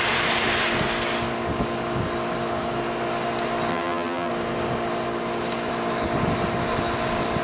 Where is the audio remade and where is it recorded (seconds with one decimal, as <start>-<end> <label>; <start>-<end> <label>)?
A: 0.0-3.7 recorded; 3.7-4.3 remade; 4.3-7.4 recorded